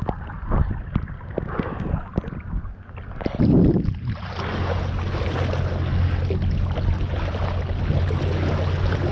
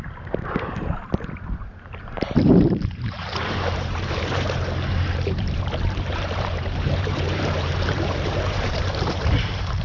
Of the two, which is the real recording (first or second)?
first